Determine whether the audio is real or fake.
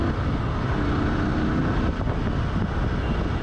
real